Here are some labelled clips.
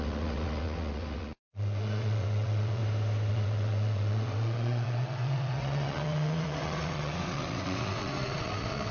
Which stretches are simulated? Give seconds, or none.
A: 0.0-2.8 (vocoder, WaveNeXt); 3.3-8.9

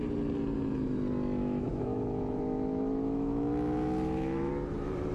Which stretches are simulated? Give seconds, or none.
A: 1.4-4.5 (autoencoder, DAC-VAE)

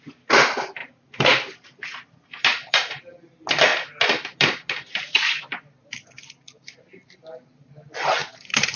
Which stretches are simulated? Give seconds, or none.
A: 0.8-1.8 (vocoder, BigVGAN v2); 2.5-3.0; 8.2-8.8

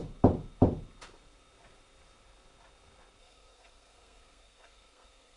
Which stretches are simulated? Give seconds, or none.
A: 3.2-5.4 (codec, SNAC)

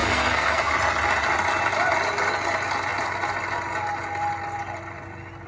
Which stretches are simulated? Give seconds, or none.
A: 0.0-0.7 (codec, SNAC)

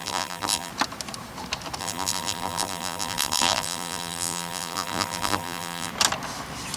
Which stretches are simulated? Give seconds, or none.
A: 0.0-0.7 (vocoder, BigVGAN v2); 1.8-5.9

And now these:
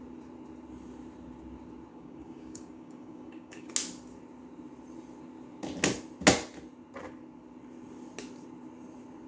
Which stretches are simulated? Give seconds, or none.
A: 1.9-3.7 (codec, DAC)

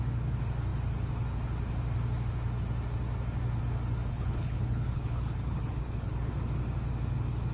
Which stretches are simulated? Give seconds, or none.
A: 4.1-6.3 (codec, HILCodec)